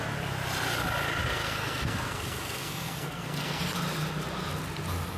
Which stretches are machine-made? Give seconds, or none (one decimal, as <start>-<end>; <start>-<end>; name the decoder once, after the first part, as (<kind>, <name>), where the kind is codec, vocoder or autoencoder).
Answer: 1.3-3.6 (codec, SNAC)